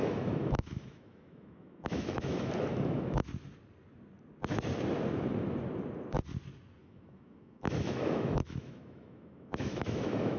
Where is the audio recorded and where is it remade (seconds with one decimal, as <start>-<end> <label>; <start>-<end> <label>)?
0.0-3.2 remade; 3.2-6.8 recorded; 6.8-10.4 remade